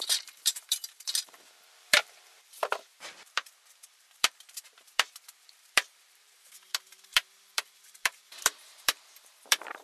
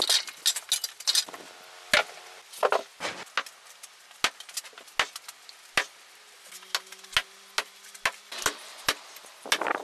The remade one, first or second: first